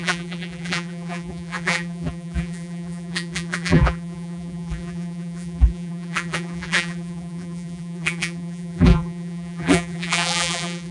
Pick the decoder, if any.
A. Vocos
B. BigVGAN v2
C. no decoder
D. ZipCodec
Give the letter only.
B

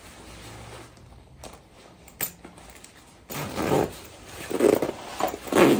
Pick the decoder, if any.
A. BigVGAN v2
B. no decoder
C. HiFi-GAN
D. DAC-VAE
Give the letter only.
B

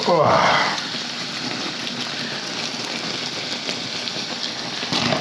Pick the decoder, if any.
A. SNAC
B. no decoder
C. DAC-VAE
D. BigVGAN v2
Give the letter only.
B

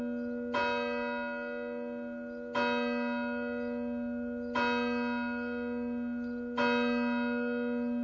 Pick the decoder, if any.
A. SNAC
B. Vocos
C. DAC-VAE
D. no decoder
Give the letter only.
D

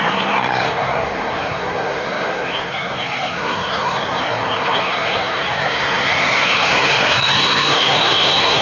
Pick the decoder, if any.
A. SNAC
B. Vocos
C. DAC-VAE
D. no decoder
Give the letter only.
A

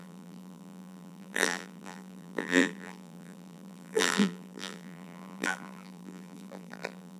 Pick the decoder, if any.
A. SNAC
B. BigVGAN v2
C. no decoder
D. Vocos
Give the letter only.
B